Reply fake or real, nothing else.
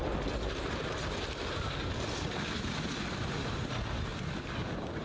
real